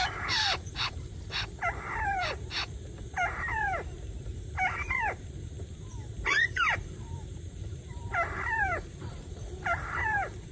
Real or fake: fake